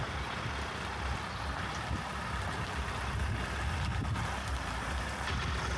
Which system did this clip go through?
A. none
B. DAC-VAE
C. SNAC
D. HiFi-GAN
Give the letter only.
A